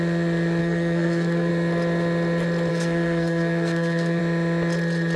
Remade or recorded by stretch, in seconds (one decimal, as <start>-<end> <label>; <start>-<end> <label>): 0.0-0.6 recorded; 0.6-1.5 remade; 1.5-2.7 recorded; 2.7-4.2 remade; 4.2-5.2 recorded